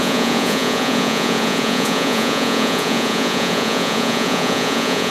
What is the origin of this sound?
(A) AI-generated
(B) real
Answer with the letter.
A